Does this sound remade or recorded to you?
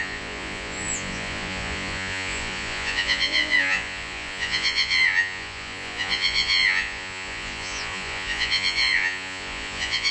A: remade